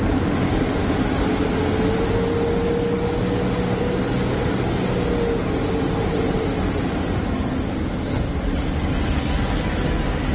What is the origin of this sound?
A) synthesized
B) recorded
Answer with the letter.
B